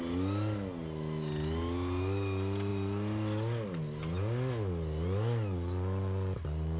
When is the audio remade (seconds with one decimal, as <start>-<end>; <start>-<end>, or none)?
none